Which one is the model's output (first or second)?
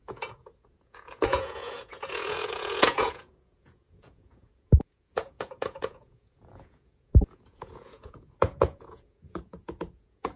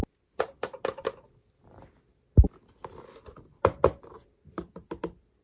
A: first